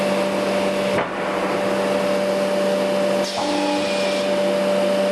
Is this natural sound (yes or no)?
yes